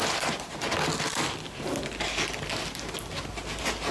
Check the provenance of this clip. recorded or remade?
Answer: recorded